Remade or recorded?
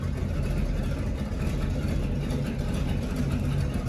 recorded